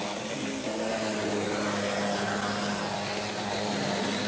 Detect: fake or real real